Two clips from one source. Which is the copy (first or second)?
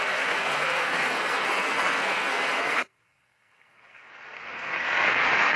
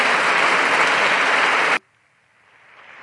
first